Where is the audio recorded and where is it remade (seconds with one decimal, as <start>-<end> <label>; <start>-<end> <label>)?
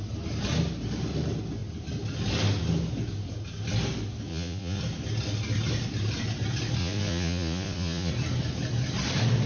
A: 0.0-4.3 recorded; 4.3-4.8 remade; 4.8-6.8 recorded; 6.8-8.1 remade; 8.1-9.5 recorded